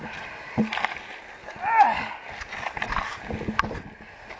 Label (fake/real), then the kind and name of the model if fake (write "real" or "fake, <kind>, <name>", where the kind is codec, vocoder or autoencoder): real